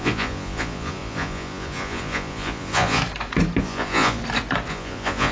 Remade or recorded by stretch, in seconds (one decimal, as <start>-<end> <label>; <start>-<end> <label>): 0.0-3.0 remade; 3.0-3.6 recorded; 3.6-4.2 remade; 4.2-4.7 recorded; 4.7-5.3 remade

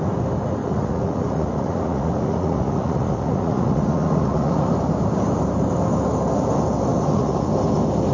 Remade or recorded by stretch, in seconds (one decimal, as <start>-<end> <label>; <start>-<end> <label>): 0.0-0.6 recorded; 0.6-4.7 remade; 4.7-6.9 recorded; 6.9-7.5 remade; 7.5-8.1 recorded

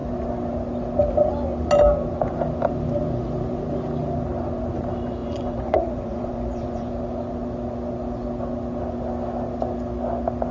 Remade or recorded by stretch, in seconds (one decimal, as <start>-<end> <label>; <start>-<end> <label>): 0.0-5.2 recorded; 5.2-6.9 remade; 6.9-10.5 recorded

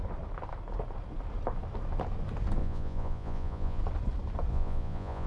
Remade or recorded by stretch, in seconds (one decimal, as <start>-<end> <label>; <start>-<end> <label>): 0.0-2.6 recorded; 2.6-3.8 remade; 3.8-4.5 recorded; 4.5-5.3 remade

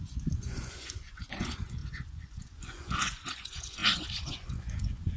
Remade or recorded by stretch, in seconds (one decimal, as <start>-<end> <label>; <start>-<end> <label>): 0.0-5.2 remade

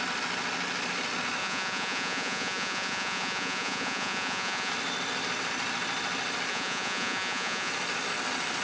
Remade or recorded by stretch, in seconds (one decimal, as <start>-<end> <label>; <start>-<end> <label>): 0.0-1.4 recorded; 1.4-4.7 remade; 4.7-6.5 recorded; 6.5-7.7 remade; 7.7-8.6 recorded